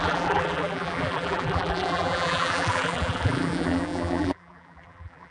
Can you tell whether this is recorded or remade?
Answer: remade